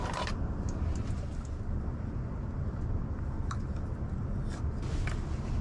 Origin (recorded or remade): recorded